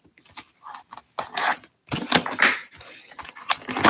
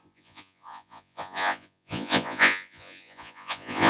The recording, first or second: first